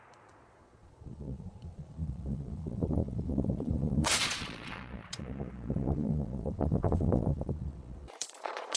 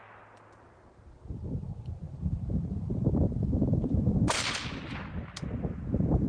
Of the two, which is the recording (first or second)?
second